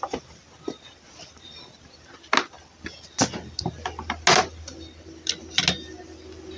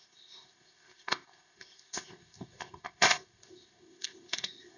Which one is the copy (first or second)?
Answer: second